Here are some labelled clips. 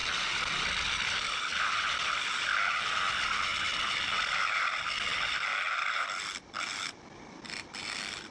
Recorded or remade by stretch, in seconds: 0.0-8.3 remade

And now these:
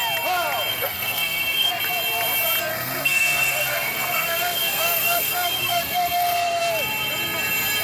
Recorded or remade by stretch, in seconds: 0.0-0.7 recorded; 0.7-1.7 remade; 1.7-2.7 recorded; 2.7-6.6 remade; 6.6-7.8 recorded

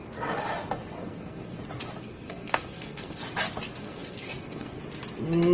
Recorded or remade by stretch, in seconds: 0.0-1.0 recorded; 1.0-1.6 remade; 1.6-2.0 recorded; 2.0-3.2 remade; 3.2-3.8 recorded; 3.8-4.8 remade; 4.8-5.5 recorded

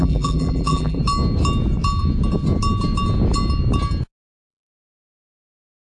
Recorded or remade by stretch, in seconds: 0.0-1.0 remade; 1.0-4.5 recorded; 4.5-5.8 remade

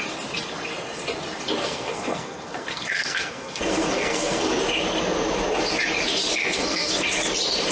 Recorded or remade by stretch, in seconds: 0.0-1.6 recorded; 1.6-4.6 remade; 4.6-6.4 recorded; 6.4-6.9 remade; 6.9-7.7 recorded

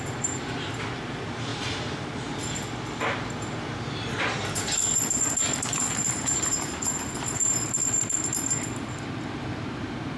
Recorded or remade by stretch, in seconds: 0.0-1.5 remade; 1.5-4.5 recorded; 4.5-10.2 remade

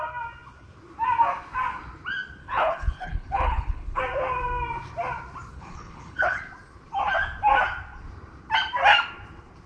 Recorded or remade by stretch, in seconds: 0.0-2.4 recorded; 2.4-4.0 remade; 4.0-5.5 recorded; 5.5-6.4 remade; 6.4-9.7 recorded

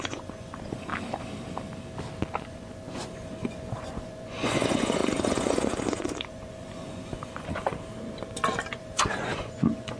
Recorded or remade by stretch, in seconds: 0.0-0.9 remade; 0.9-2.4 recorded; 2.4-7.7 remade; 7.7-8.7 recorded; 8.7-10.0 remade